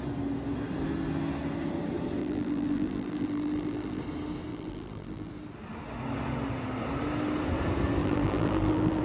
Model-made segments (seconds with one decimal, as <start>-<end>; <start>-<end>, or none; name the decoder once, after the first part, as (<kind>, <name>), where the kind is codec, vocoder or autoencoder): 2.2-4.0 (vocoder, BigVGAN v2); 4.5-5.3; 8.0-9.0